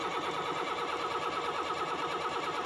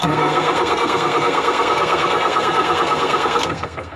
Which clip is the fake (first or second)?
second